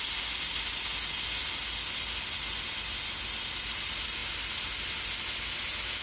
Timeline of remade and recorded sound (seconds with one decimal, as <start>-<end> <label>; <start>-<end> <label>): 0.0-6.0 recorded